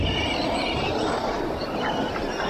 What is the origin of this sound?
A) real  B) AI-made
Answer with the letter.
B